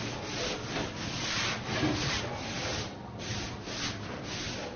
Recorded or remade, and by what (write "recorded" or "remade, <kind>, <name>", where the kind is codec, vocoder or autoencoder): recorded